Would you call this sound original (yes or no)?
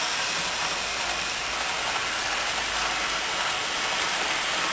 yes